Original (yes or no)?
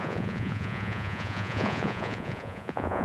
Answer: no